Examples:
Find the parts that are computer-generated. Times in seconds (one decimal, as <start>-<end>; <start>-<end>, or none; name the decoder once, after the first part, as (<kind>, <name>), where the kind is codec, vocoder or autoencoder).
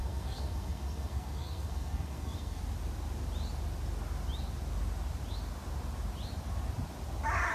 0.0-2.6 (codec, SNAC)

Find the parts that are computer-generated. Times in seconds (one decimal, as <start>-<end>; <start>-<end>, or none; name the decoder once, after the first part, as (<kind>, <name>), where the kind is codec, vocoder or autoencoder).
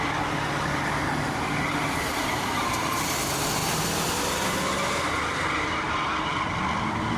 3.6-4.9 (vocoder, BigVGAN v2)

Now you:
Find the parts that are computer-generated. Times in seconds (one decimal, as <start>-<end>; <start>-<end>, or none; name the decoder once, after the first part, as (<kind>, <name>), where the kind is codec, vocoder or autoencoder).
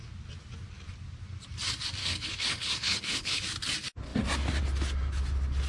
2.0-3.4 (codec, HILCodec)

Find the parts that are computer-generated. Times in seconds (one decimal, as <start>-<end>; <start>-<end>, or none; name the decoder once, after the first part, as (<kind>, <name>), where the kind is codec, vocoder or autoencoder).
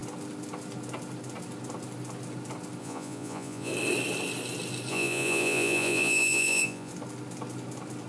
2.8-3.7 (vocoder, Vocos); 4.9-6.9